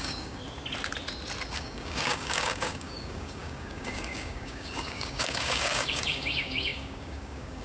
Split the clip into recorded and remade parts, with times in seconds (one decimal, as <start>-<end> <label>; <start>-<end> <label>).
0.0-0.4 remade; 0.4-1.5 recorded; 1.5-7.6 remade